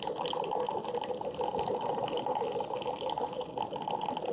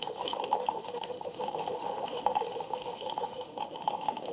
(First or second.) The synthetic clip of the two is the second